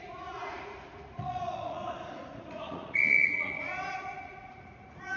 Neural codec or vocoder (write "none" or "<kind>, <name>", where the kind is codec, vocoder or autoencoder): vocoder, Vocos